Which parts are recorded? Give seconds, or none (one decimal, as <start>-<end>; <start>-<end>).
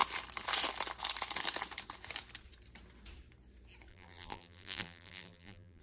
0.0-3.9